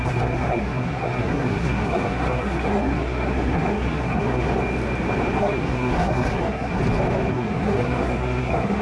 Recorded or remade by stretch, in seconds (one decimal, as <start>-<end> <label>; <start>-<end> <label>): 0.0-4.5 remade; 4.5-5.4 recorded; 5.4-6.8 remade; 6.8-7.3 recorded; 7.3-8.8 remade